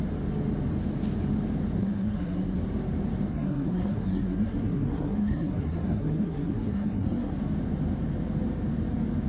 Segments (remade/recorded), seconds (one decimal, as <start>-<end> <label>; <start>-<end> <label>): 0.0-1.8 recorded; 1.8-2.6 remade; 2.6-3.3 recorded; 3.3-7.3 remade; 7.3-9.3 recorded